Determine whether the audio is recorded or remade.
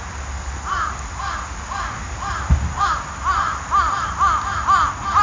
recorded